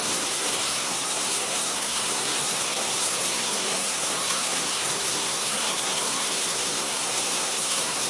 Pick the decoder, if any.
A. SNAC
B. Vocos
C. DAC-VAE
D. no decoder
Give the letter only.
A